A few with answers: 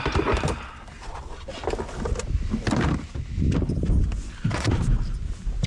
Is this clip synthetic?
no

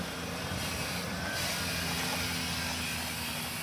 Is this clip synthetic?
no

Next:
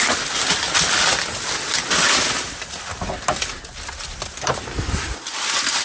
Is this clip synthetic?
no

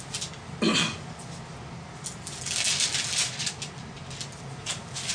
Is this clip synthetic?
no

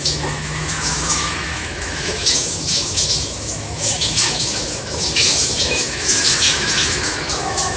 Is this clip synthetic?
yes